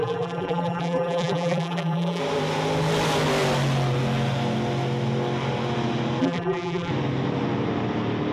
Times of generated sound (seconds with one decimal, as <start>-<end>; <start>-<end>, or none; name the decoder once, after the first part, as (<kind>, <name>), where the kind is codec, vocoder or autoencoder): 0.0-2.2 (vocoder, BigVGAN v2); 6.2-6.9